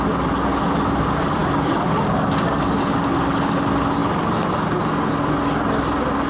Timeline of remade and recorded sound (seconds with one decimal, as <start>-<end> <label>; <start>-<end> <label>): 0.0-6.3 recorded